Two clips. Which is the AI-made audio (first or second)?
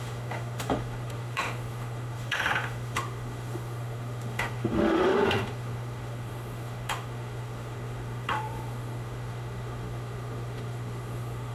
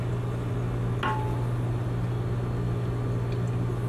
first